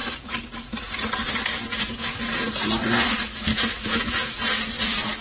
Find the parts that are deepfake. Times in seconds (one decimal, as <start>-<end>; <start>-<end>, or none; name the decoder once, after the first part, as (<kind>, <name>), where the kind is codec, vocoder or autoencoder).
3.5-4.4 (autoencoder, DAC-VAE)